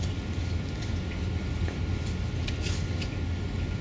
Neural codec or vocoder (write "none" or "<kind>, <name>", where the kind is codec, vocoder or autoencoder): none